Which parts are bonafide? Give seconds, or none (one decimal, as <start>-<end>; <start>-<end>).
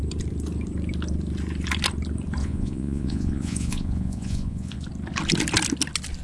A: 0.0-2.4; 4.8-6.2